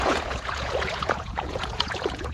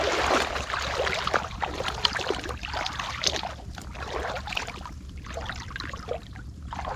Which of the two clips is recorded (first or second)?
second